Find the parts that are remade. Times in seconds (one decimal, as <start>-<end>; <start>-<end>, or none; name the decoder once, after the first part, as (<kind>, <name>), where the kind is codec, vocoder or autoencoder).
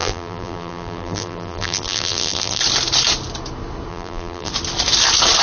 0.0-2.6 (vocoder, BigVGAN v2); 3.9-4.5